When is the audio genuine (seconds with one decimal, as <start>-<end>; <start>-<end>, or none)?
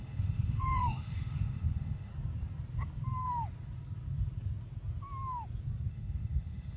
2.1-5.9